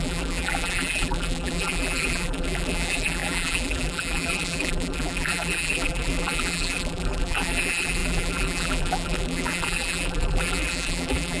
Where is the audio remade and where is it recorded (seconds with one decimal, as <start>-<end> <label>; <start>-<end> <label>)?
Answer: 0.0-11.4 remade